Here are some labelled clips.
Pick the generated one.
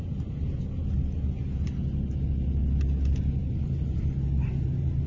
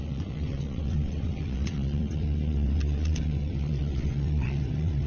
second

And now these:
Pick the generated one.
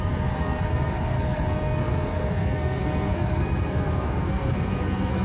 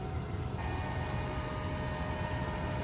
first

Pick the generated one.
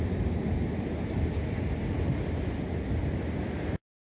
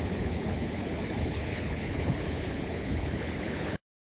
second